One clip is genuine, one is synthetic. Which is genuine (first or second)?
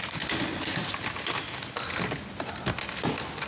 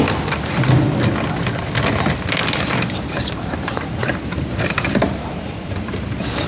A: first